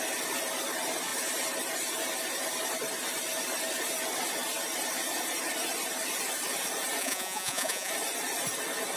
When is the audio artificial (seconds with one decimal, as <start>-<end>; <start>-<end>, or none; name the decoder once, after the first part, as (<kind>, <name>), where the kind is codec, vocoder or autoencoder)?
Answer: 7.0-7.9 (vocoder, Vocos)